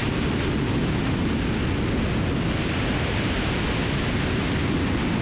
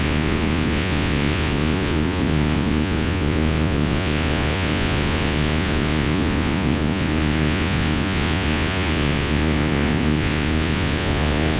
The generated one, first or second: second